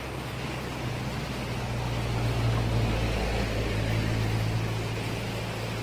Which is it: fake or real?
real